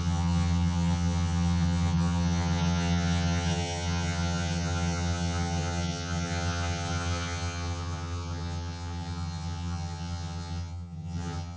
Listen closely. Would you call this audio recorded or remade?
remade